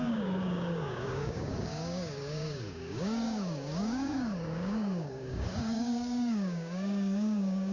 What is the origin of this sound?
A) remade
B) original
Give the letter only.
A